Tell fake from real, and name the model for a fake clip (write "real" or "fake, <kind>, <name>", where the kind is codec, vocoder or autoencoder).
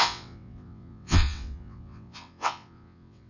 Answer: fake, vocoder, WaveNeXt